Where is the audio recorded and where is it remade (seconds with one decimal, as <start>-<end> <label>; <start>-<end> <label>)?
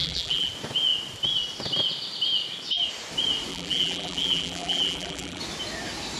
0.0-0.5 remade; 0.5-3.5 recorded; 3.5-5.4 remade; 5.4-6.2 recorded